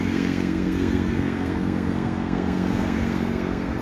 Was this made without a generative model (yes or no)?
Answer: no